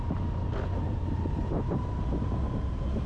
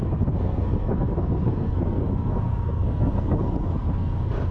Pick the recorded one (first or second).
first